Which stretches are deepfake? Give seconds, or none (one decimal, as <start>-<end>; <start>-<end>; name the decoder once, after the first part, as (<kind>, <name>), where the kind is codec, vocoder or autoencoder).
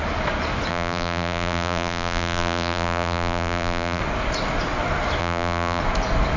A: 0.7-4.0 (vocoder, BigVGAN v2); 5.2-5.8